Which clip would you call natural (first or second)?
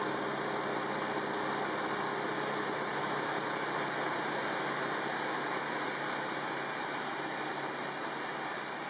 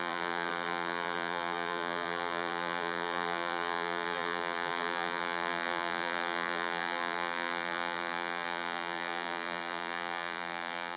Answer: first